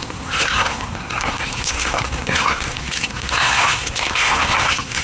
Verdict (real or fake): fake